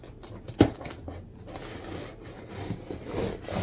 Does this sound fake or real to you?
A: real